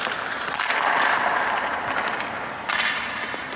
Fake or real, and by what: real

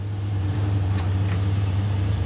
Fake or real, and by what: fake, vocoder, BigVGAN v2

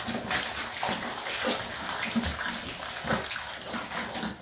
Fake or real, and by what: real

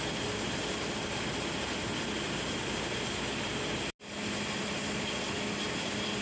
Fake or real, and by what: real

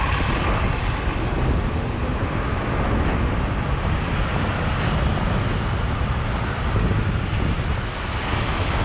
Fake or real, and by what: real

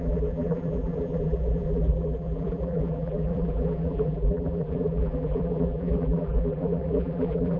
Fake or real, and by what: fake, vocoder, BigVGAN v2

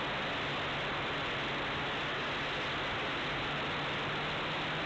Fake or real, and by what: real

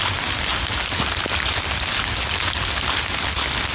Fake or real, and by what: real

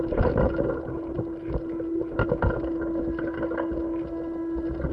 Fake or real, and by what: real